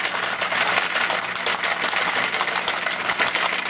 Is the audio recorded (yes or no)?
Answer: yes